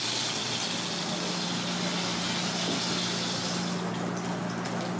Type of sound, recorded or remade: recorded